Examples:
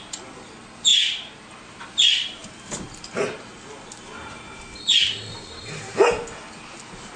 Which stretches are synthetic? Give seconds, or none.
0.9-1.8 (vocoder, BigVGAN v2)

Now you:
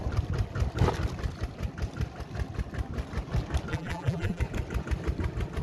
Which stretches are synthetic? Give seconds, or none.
3.7-4.4 (vocoder, BigVGAN v2)

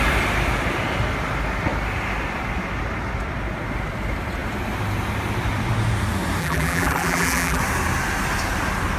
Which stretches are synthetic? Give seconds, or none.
6.4-7.6 (vocoder, BigVGAN v2)

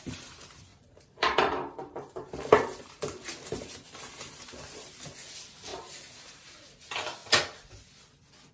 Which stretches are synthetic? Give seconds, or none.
0.7-4.9 (vocoder, BigVGAN v2); 5.7-6.5

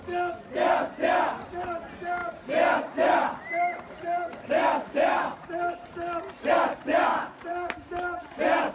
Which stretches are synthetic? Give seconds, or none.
2.2-6.5 (vocoder, BigVGAN v2); 7.1-7.9